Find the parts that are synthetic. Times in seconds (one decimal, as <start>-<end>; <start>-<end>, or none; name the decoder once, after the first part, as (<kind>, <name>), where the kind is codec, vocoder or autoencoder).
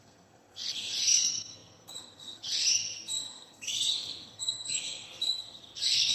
0.0-6.1 (codec, SNAC)